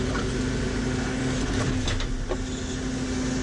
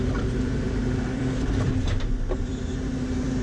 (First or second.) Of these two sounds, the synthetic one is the second